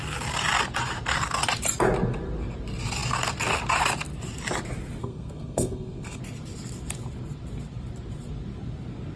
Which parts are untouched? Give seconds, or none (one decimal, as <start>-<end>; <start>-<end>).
0.0-5.0; 6.2-9.2